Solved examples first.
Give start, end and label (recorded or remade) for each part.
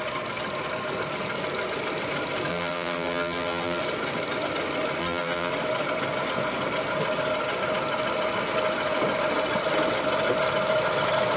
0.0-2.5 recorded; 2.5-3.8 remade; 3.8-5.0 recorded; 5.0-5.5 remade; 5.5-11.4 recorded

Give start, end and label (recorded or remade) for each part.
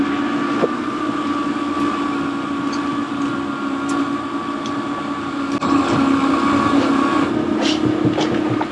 0.0-8.7 recorded